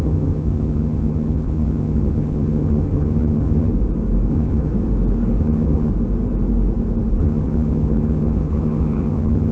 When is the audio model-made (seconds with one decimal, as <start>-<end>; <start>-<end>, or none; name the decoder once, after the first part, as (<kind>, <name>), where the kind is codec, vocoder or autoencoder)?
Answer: 0.0-3.7 (vocoder, HiFi-GAN); 4.3-4.7; 5.4-5.9; 7.2-9.5